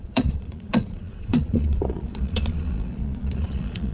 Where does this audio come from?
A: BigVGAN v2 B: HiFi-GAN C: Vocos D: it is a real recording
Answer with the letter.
C